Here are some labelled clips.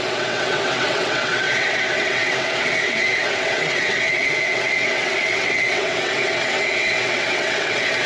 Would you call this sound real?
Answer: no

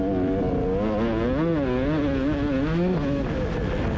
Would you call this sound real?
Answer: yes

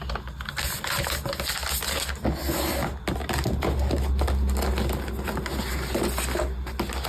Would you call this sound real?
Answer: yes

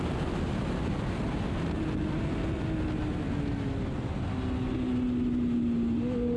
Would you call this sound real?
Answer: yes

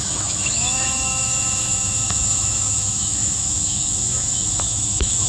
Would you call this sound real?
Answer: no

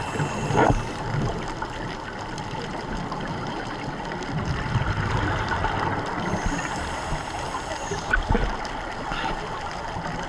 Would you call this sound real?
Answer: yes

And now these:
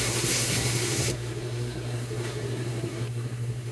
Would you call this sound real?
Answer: no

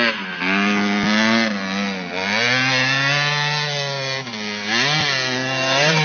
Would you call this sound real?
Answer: yes